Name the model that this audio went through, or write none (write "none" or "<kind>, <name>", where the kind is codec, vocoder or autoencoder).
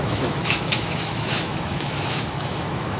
autoencoder, DAC-VAE